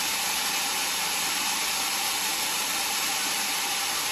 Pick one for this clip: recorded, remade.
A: remade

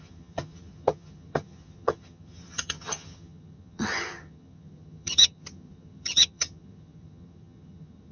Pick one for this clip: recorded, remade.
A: remade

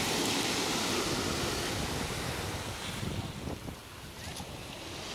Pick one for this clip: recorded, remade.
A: recorded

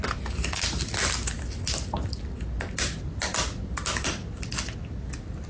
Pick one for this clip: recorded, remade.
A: recorded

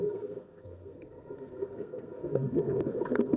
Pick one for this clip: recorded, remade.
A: remade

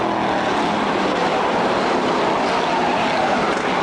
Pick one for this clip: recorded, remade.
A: recorded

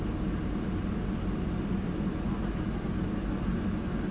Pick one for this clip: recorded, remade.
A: recorded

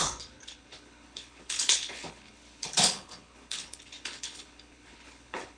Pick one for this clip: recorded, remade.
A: remade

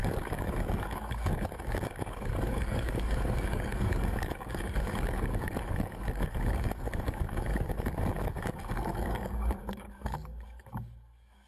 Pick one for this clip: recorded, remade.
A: remade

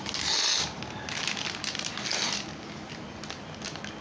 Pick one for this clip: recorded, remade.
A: recorded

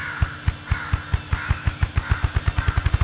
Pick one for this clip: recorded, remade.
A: recorded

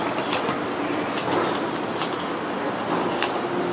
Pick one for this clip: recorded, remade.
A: recorded